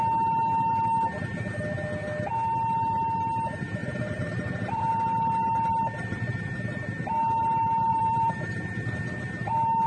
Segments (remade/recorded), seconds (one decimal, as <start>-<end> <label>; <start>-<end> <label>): 0.0-3.8 recorded; 3.8-4.9 remade; 4.9-7.9 recorded; 7.9-8.5 remade; 8.5-9.9 recorded